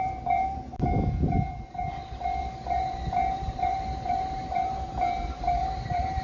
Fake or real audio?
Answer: fake